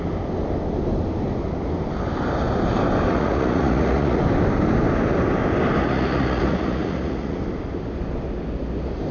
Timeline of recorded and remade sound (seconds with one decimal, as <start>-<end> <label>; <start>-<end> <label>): 0.0-3.1 recorded; 3.1-4.2 remade; 4.2-5.8 recorded; 5.8-7.4 remade; 7.4-9.1 recorded